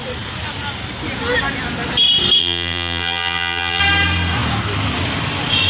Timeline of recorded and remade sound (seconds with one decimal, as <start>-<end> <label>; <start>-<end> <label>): 0.0-2.4 recorded; 2.4-3.8 remade; 3.8-5.7 recorded